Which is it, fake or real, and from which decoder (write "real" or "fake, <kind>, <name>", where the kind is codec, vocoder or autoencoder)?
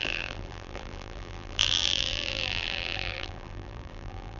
fake, vocoder, BigVGAN v2